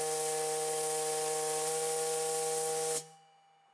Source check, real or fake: real